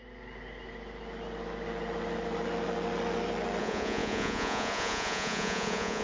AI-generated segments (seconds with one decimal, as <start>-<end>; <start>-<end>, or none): 3.6-6.0